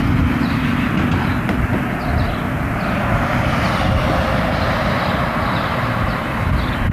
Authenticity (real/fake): real